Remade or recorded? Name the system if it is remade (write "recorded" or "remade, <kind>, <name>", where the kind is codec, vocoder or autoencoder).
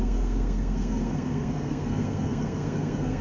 remade, codec, SNAC